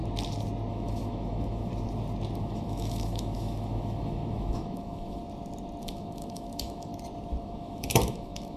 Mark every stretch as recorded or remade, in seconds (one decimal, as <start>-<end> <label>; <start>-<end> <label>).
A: 0.0-0.7 recorded; 0.7-1.7 remade; 1.7-2.4 recorded; 2.4-5.2 remade; 5.2-5.8 recorded; 5.8-6.9 remade; 6.9-7.4 recorded; 7.4-8.6 remade